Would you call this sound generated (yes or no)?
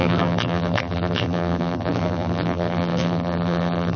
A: yes